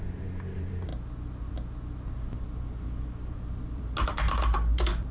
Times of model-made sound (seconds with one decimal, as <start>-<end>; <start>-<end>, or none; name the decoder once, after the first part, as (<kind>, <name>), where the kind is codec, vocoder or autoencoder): none